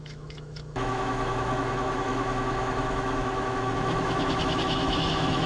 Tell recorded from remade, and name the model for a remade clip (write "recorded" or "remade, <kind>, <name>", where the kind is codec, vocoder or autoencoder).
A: remade, autoencoder, DAC-VAE